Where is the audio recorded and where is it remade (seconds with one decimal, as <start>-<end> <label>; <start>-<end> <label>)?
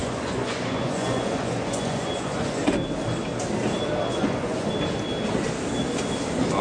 0.0-2.6 remade; 2.6-4.1 recorded; 4.1-4.7 remade; 4.7-6.6 recorded